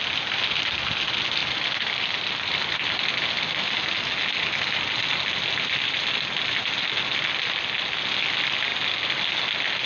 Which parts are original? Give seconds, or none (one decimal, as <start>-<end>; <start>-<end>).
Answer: 0.0-1.4; 2.6-9.9